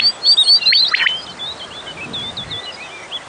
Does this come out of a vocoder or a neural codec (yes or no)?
no